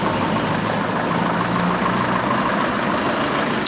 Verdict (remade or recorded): recorded